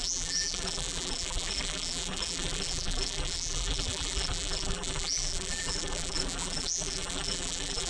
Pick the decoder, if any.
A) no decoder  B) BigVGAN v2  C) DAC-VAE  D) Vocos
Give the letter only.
B